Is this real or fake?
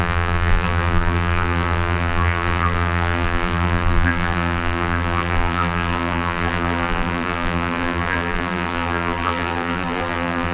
fake